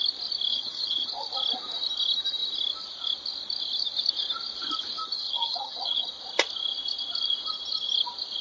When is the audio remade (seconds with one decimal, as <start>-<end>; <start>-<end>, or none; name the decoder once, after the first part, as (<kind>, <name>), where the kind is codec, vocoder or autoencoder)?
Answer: 0.5-1.1 (vocoder, HiFi-GAN); 5.0-6.1